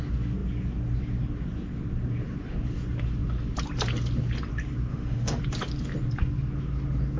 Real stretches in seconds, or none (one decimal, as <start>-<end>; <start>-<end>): 0.0-4.9; 5.4-7.2